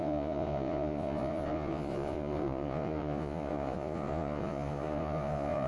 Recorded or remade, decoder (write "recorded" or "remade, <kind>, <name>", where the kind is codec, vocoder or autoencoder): remade, vocoder, Vocos